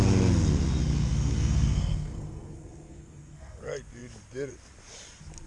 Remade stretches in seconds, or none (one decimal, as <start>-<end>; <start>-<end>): 1.1-3.6